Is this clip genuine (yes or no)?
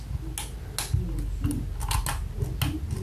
yes